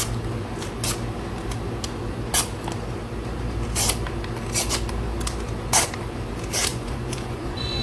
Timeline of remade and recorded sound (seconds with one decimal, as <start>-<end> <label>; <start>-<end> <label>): 0.0-6.7 recorded; 6.7-7.8 remade